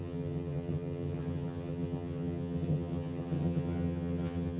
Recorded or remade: remade